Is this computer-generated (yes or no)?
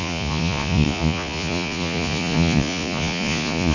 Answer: yes